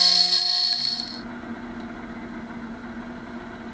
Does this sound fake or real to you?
real